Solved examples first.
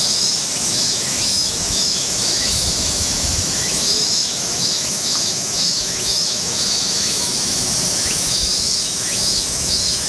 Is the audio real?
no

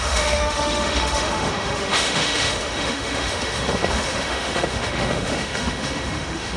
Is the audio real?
no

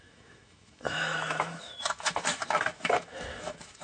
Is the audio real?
no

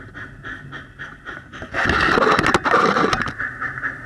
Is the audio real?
yes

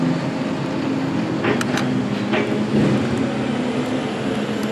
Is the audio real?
yes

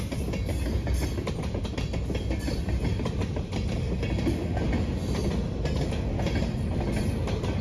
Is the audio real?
yes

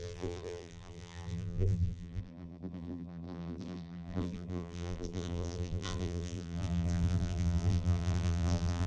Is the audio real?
no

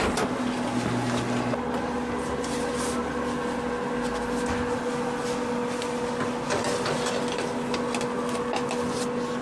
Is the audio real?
yes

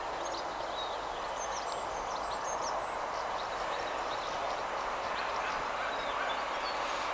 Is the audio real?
yes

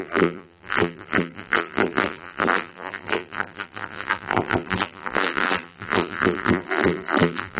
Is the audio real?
no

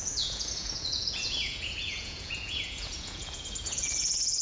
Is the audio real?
no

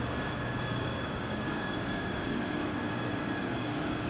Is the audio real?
no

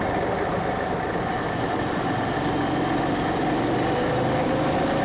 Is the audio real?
yes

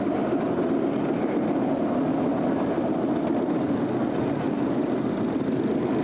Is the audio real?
yes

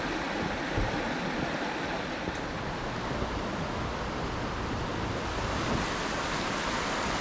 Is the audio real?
yes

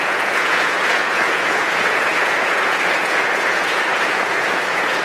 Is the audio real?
no